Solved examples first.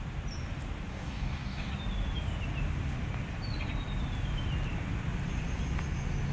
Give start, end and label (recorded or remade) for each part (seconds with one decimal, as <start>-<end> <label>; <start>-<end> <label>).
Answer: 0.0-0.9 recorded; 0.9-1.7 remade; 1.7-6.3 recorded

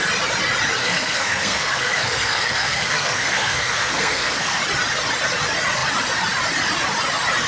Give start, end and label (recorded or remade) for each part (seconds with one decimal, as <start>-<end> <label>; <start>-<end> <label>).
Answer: 0.0-0.8 recorded; 0.8-4.6 remade; 4.6-7.5 recorded

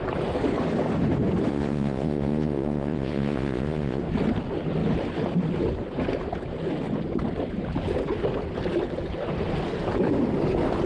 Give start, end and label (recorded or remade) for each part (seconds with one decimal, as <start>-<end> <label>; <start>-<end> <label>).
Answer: 0.0-1.5 recorded; 1.5-4.0 remade; 4.0-10.9 recorded

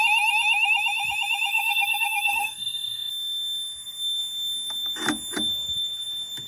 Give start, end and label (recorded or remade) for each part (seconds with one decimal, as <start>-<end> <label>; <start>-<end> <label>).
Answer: 0.0-1.5 recorded; 1.5-3.1 remade; 3.1-6.5 recorded

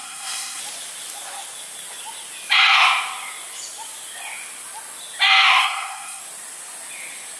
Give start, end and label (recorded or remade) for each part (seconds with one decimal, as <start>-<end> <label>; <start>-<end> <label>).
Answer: 0.0-0.6 remade; 0.6-5.6 recorded; 5.6-6.2 remade; 6.2-7.4 recorded